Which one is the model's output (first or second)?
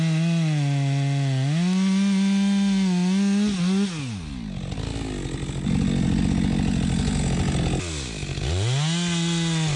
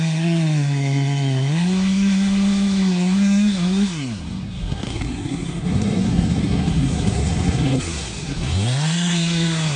second